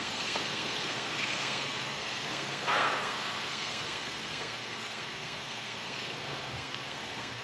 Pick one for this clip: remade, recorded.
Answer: remade